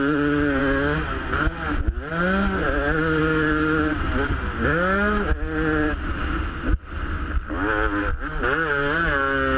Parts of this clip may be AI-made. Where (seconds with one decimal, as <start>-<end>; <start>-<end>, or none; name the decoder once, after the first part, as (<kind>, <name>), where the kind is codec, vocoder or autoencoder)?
none